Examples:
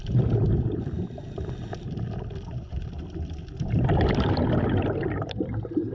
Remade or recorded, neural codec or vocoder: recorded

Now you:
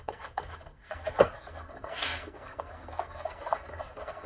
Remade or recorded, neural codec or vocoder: remade, codec, SNAC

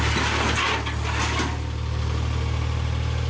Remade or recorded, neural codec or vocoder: recorded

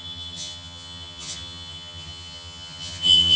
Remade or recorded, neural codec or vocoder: remade, vocoder, HiFi-GAN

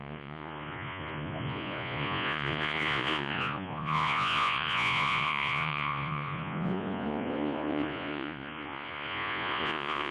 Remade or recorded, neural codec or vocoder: remade, vocoder, Vocos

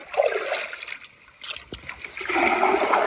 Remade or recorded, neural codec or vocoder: recorded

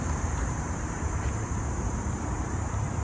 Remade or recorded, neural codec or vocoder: remade, vocoder, BigVGAN v2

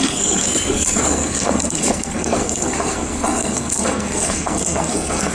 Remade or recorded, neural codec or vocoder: remade, codec, SNAC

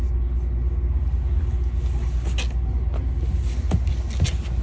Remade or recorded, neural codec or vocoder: recorded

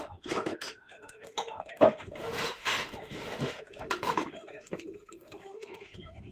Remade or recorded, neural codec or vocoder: remade, autoencoder, DAC-VAE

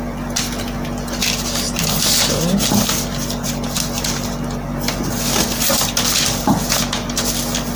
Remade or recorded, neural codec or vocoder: recorded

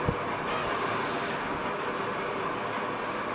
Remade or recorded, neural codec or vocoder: recorded